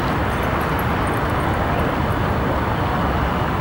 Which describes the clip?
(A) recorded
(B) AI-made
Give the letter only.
A